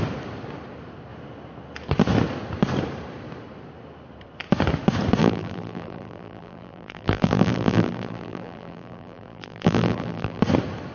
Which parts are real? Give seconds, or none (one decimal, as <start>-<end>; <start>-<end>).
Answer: 0.0-5.2; 10.4-10.9